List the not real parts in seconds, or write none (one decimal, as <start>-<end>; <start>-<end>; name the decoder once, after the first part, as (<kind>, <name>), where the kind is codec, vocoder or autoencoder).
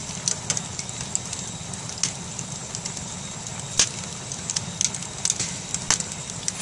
none